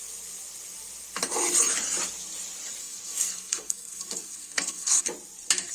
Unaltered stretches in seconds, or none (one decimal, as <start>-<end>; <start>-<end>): 0.0-2.8; 5.0-5.7

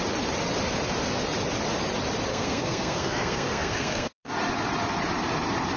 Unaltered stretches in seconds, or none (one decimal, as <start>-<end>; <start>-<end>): 0.0-2.3; 4.3-5.8

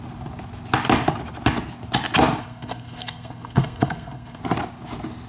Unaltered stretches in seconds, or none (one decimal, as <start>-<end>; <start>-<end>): 0.0-2.4; 4.4-5.3

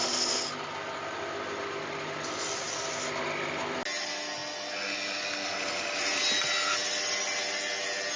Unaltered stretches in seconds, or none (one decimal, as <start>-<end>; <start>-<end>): 0.0-8.2

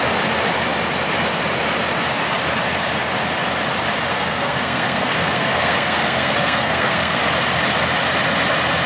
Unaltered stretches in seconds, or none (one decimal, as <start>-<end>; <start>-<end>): 0.0-4.1; 7.2-8.9

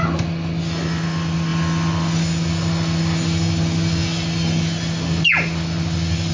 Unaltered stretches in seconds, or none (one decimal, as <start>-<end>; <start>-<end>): 0.0-6.3

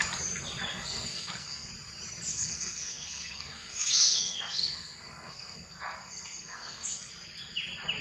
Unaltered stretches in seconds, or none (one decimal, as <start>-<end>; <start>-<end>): 0.0-0.7; 1.7-2.3; 7.1-8.0